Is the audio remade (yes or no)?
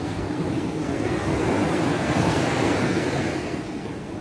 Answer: yes